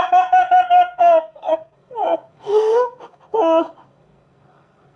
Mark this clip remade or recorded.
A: remade